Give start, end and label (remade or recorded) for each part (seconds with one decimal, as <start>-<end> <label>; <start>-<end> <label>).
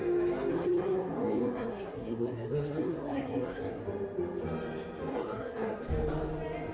0.0-0.5 recorded; 0.5-3.8 remade; 3.8-5.1 recorded; 5.1-5.8 remade; 5.8-6.7 recorded